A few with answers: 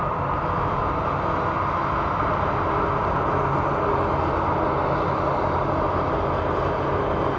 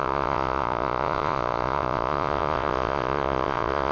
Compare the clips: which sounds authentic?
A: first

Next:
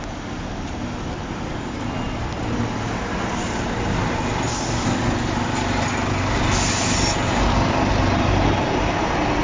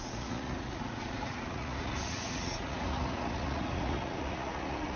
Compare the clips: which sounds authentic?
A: first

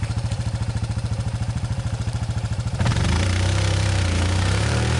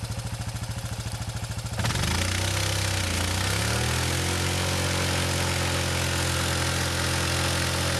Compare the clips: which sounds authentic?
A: second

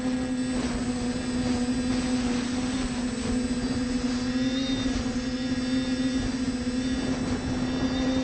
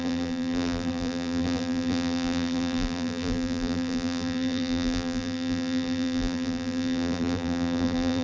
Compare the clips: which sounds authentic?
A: first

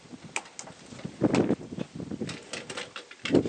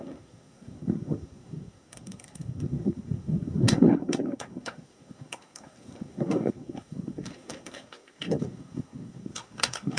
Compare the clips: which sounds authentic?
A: first